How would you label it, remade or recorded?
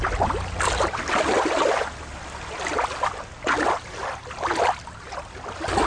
recorded